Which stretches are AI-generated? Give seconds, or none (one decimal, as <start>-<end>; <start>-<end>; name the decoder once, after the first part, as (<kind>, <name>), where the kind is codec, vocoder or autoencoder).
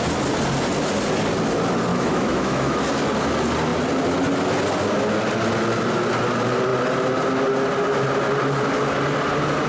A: 1.9-2.8 (autoencoder, DAC-VAE)